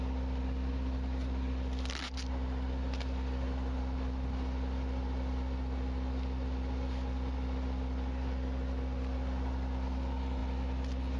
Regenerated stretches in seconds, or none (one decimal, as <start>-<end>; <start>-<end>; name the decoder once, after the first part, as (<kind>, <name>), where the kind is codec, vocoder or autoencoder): none